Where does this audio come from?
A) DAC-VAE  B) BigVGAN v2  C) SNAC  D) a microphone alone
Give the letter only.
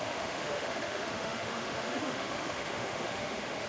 A